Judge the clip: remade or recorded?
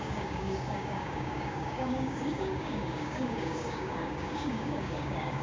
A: remade